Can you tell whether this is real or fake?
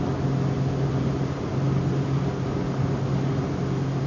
real